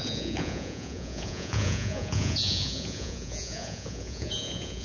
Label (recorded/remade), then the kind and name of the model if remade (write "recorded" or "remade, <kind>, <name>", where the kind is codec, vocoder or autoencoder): remade, vocoder, Vocos